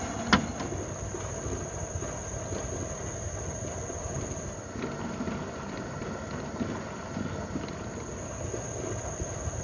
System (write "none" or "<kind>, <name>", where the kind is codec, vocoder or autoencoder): none